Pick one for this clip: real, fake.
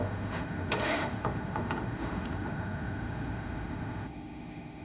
fake